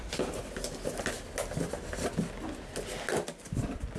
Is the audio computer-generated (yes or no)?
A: no